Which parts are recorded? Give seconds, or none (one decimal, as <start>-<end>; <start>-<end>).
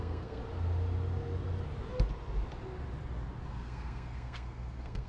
0.4-3.5